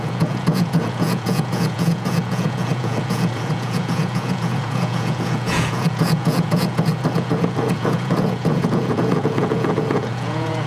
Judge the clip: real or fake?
fake